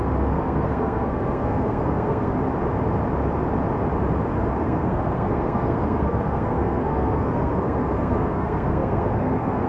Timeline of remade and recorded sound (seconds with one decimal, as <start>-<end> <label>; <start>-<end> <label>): 0.0-2.3 remade; 2.3-4.5 recorded; 4.5-9.7 remade